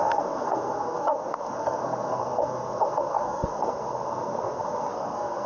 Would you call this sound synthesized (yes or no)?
yes